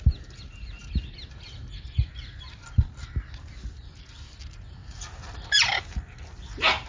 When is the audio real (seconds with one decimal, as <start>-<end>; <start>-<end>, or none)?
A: 0.0-6.9